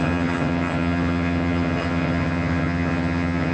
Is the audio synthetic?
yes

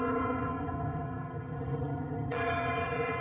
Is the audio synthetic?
yes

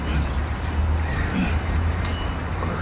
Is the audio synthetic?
no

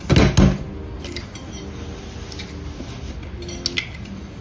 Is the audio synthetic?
no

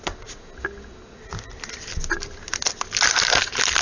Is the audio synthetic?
no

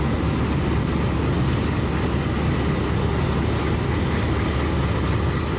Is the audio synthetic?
no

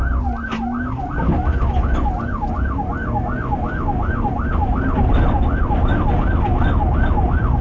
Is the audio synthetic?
no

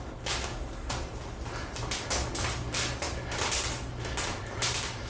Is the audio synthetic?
no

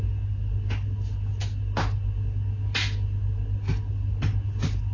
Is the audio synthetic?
no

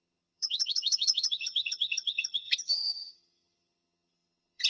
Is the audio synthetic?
yes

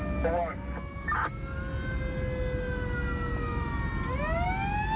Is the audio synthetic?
no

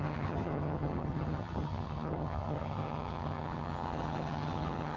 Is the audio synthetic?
yes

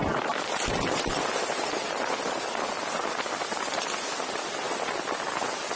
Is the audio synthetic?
no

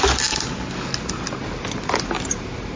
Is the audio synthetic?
no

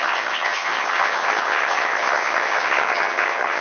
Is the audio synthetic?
yes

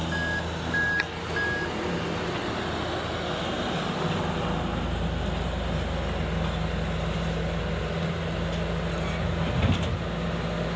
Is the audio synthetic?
no